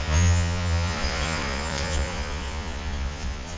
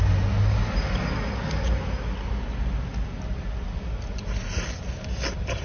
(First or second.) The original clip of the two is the second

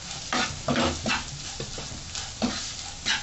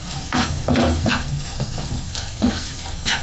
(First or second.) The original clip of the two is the first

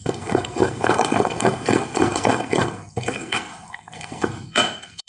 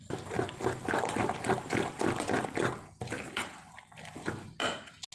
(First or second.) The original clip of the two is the second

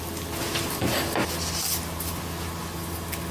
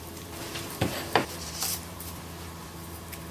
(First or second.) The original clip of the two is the first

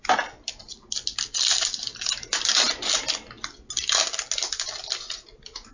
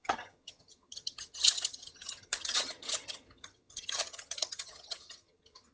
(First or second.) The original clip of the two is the first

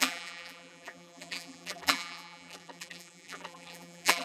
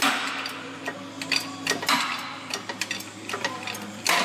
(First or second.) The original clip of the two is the second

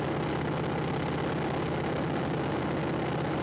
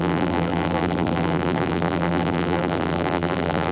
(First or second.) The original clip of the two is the first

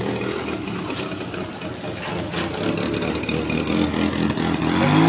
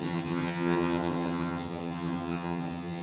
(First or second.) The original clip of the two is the first